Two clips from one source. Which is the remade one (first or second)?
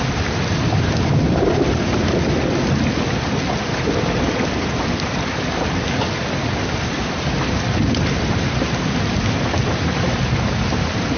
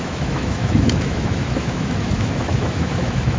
second